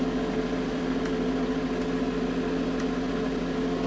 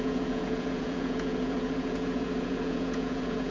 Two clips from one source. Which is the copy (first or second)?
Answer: second